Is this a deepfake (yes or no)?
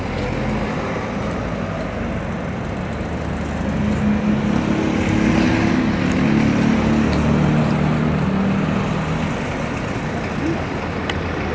no